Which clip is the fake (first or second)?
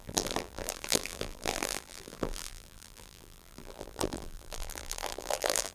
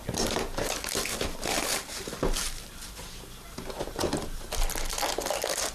first